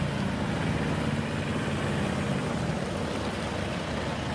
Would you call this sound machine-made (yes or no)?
no